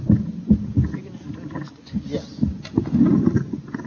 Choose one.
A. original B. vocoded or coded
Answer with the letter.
A